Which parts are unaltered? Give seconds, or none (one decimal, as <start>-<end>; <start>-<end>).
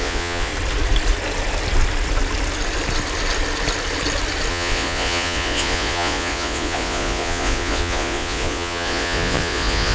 0.5-4.5